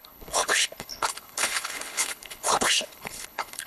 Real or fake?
fake